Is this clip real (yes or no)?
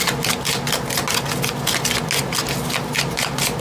yes